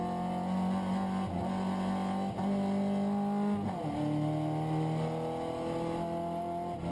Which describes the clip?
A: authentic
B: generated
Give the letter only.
A